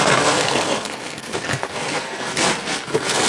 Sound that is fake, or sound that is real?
fake